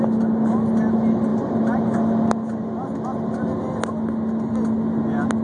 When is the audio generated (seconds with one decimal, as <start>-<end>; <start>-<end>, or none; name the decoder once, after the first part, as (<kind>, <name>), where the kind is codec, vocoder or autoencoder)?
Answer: none